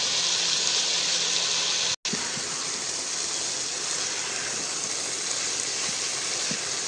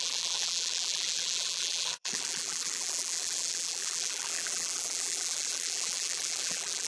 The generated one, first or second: second